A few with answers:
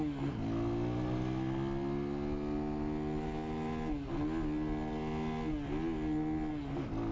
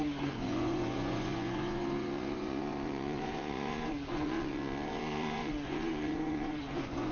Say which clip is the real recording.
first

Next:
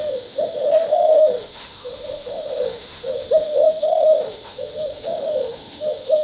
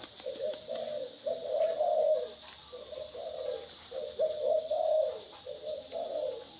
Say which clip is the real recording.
second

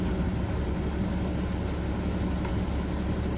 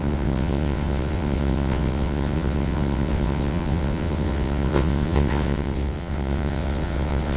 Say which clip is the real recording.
first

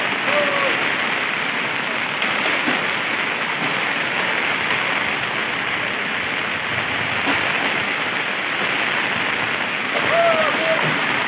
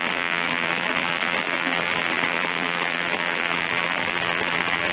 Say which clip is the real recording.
first